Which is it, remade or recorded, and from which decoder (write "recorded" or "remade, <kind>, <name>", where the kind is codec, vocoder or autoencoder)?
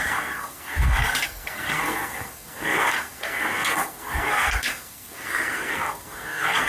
remade, codec, SNAC